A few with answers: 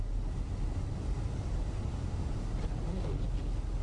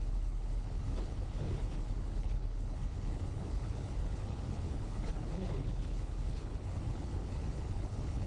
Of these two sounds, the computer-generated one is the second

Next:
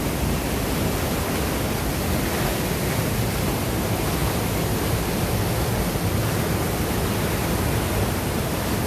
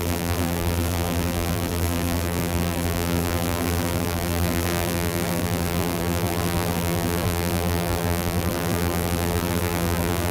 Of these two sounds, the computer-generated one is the second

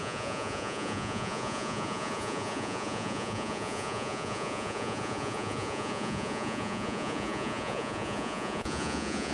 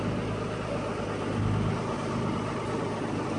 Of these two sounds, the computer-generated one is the first